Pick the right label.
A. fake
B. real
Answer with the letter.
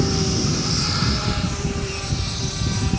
A